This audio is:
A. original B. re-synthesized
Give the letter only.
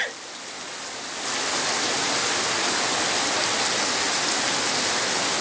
A